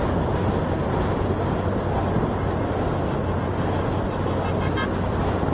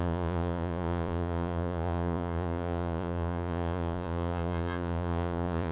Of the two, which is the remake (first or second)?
second